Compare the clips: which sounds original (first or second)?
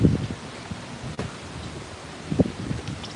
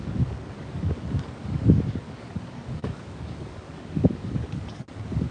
first